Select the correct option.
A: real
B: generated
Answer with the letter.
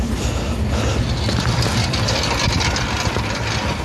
A